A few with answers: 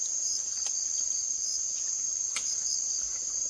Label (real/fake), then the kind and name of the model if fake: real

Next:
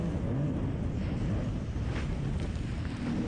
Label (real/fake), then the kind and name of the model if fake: real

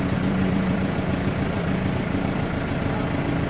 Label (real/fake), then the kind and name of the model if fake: fake, vocoder, BigVGAN v2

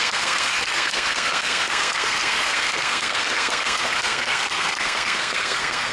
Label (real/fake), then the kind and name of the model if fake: fake, codec, SNAC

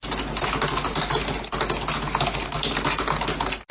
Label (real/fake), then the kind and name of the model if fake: real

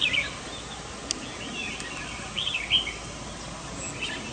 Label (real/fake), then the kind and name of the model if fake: real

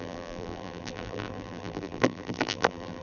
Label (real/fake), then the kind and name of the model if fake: fake, vocoder, BigVGAN v2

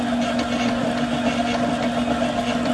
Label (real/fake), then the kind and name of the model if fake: real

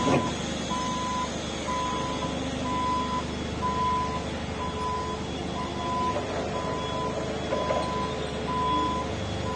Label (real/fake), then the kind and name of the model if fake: real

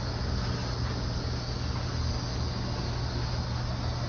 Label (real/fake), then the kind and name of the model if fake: real